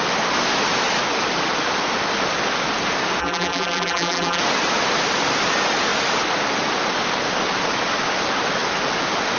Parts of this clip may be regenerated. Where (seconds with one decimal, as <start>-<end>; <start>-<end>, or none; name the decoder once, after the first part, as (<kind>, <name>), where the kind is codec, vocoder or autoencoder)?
3.2-4.4 (vocoder, BigVGAN v2)